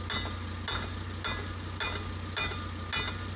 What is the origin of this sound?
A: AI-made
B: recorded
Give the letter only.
B